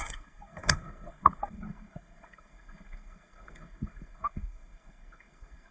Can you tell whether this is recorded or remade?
remade